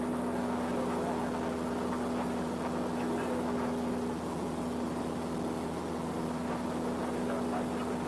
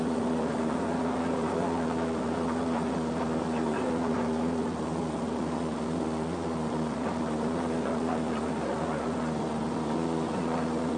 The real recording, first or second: first